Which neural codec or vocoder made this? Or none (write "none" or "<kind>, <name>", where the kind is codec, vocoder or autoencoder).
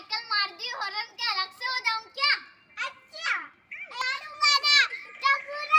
vocoder, BigVGAN v2